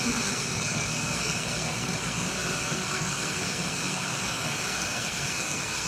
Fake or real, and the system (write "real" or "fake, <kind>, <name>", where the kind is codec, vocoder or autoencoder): fake, codec, SNAC